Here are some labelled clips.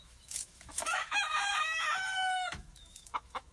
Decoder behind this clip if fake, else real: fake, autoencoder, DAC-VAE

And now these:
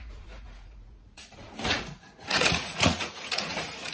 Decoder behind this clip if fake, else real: fake, vocoder, Vocos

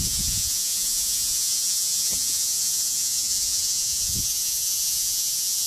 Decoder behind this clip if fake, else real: fake, vocoder, Vocos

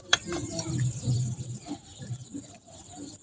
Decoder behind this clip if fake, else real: fake, vocoder, BigVGAN v2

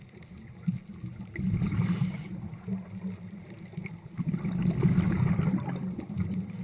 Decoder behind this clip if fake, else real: real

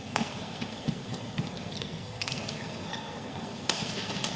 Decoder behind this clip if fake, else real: fake, codec, SNAC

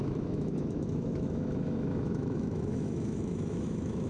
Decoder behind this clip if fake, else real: fake, autoencoder, DAC-VAE